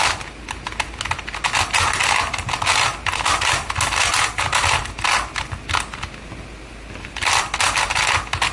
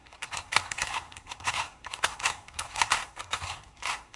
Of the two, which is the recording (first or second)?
first